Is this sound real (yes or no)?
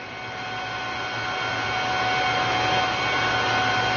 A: yes